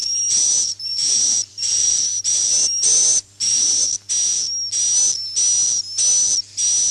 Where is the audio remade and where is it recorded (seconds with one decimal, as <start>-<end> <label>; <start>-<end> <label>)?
0.0-4.1 remade; 4.1-6.9 recorded